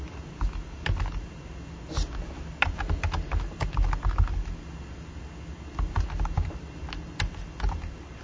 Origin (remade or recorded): recorded